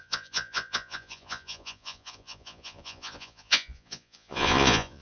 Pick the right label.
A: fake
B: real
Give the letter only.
A